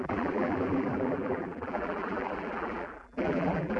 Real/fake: fake